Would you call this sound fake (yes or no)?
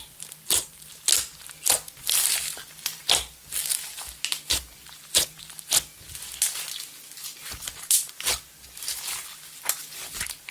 no